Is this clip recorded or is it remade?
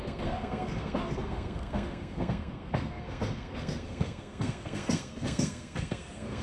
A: remade